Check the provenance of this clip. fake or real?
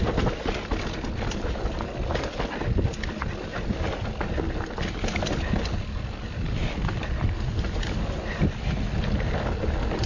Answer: real